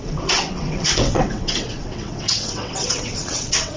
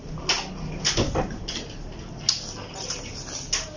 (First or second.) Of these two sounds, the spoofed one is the first